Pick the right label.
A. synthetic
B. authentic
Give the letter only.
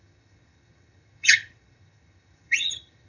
A